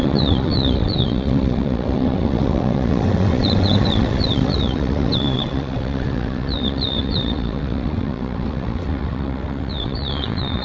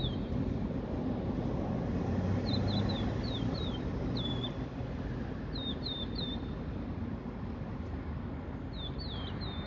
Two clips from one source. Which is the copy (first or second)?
first